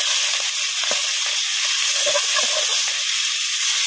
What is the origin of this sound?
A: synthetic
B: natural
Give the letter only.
B